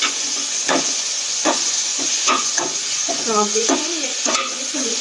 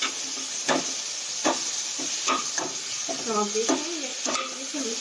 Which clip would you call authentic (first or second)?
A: second